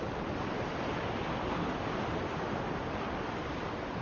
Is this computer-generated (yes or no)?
no